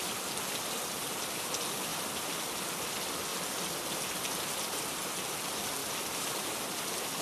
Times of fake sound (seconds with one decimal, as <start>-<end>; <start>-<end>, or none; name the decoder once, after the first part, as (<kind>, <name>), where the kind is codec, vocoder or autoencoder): 1.9-2.9 (vocoder, BigVGAN v2); 3.3-4.9; 5.8-6.6